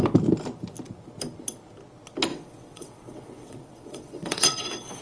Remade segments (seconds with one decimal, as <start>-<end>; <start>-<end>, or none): 2.3-5.0